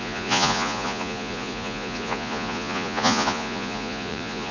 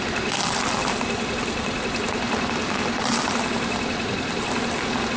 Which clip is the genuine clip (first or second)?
second